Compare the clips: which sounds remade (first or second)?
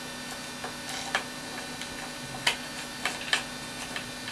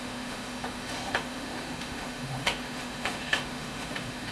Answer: second